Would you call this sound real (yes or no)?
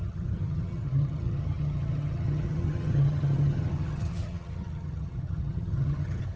no